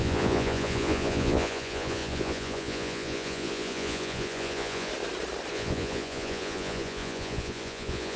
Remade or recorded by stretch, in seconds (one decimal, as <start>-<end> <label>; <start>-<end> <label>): 0.0-4.9 remade; 4.9-5.5 recorded; 5.5-8.2 remade